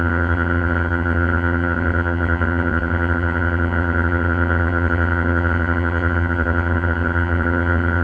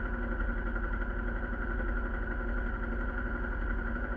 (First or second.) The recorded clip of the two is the second